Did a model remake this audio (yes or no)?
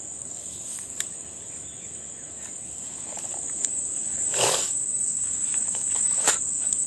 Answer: yes